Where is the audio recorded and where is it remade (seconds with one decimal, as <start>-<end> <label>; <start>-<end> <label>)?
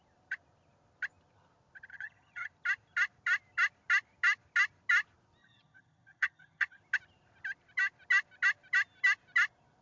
0.0-1.9 recorded; 1.9-2.5 remade; 2.5-5.4 recorded; 5.4-6.8 remade; 6.8-9.8 recorded